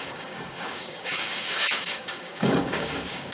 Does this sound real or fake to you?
fake